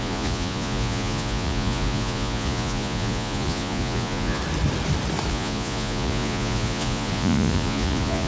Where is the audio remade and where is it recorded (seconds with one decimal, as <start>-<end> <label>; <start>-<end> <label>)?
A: 0.0-4.4 remade; 4.4-5.3 recorded; 5.3-8.3 remade